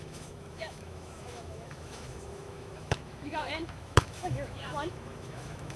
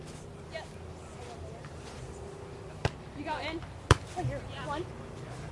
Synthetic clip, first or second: first